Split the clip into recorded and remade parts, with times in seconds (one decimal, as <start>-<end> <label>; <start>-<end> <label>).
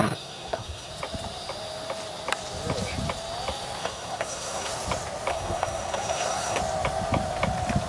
0.0-0.9 remade; 0.9-3.8 recorded; 3.8-4.7 remade; 4.7-5.3 recorded; 5.3-6.6 remade; 6.6-7.9 recorded